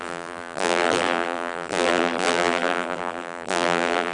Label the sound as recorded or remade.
remade